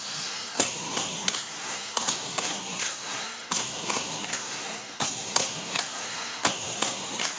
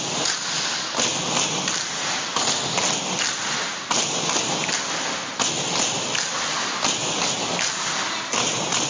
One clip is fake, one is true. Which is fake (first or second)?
first